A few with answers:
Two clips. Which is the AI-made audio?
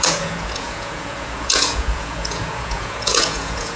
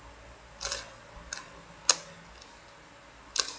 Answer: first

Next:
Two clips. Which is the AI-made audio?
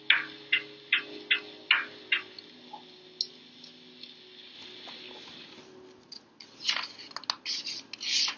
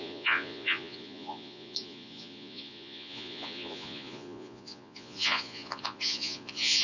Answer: second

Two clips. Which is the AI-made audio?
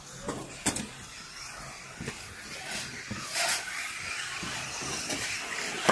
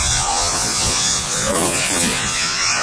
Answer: second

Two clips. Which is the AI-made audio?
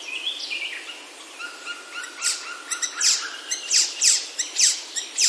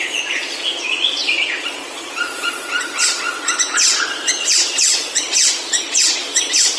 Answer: second